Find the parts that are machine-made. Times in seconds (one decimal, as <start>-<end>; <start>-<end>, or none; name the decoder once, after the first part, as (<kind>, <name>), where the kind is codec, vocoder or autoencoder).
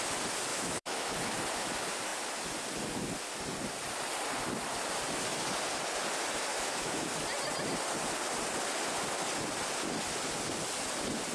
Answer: 0.5-1.1 (autoencoder, DAC-VAE); 6.5-7.1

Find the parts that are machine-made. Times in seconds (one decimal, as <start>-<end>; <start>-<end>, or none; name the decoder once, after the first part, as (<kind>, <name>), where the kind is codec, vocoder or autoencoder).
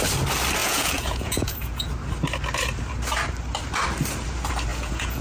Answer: 0.6-1.9 (vocoder, Vocos); 4.7-5.2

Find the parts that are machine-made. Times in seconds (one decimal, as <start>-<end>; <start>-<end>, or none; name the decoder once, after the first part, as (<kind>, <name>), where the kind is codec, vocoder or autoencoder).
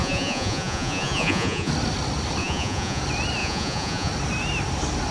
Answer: 0.0-1.7 (vocoder, Vocos); 2.4-3.0; 3.4-4.1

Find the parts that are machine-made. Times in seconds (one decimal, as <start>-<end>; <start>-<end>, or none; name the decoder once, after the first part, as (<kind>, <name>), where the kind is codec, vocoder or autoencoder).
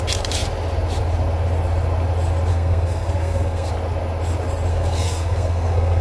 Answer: 2.5-3.7 (codec, SNAC); 4.7-6.0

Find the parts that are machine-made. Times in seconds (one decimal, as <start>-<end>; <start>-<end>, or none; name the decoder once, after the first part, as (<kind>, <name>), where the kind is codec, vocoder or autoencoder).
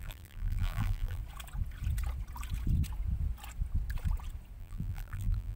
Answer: 0.0-1.2 (vocoder, BigVGAN v2); 4.6-5.6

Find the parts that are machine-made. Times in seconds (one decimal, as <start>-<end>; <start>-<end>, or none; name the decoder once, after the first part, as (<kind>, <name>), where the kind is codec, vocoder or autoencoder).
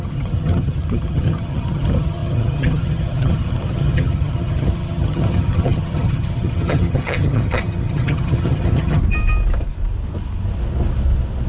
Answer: 0.0-9.0 (vocoder, HiFi-GAN)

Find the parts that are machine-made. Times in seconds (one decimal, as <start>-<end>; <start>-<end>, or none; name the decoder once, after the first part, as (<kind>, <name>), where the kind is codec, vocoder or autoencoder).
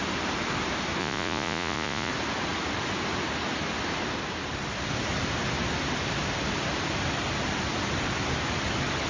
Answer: 1.0-2.1 (vocoder, Vocos)